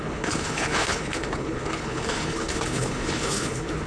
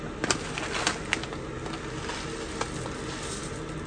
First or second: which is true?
second